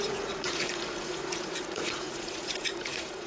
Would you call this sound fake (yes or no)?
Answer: yes